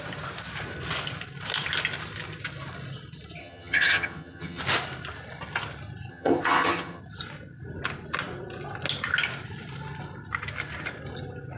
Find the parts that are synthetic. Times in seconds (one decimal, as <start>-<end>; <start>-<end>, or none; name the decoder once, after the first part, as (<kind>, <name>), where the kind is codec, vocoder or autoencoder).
3.4-4.6 (vocoder, HiFi-GAN); 6.1-7.0